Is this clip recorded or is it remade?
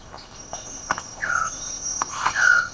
remade